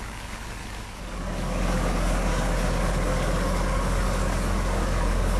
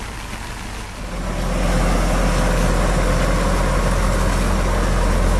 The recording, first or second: second